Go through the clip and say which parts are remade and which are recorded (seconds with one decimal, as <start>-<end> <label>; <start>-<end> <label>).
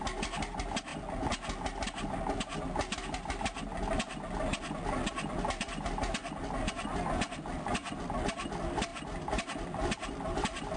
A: 0.0-10.8 recorded